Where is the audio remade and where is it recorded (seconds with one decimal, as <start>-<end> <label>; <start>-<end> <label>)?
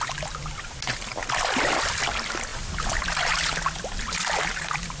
0.0-5.0 recorded